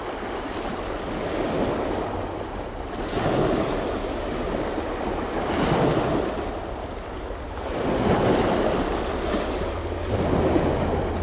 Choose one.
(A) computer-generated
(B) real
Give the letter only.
B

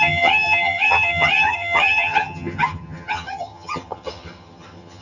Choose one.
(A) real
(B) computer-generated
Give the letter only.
B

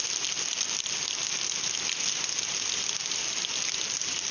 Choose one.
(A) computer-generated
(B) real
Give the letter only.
B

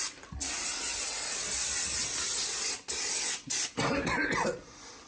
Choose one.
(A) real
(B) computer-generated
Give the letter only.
A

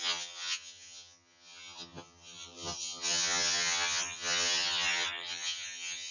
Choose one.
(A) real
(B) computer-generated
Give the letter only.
B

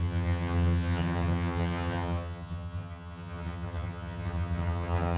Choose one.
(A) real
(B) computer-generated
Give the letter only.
B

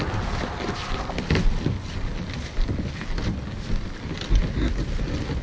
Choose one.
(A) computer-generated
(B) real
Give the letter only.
B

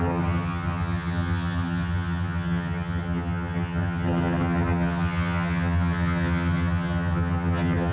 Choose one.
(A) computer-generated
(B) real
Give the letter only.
A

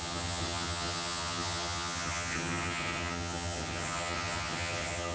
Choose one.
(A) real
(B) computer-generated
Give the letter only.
B